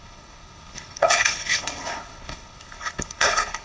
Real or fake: fake